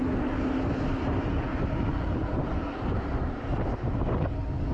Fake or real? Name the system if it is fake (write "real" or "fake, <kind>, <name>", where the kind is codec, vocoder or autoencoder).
real